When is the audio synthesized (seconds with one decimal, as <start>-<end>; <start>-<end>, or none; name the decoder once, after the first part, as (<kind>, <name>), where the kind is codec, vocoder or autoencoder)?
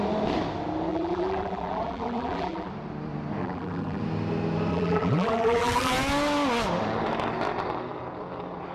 0.9-2.7 (vocoder, BigVGAN v2); 3.4-4.0; 4.7-5.9